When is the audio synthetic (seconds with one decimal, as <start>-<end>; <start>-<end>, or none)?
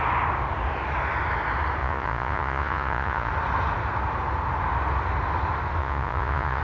1.8-3.3; 5.8-6.6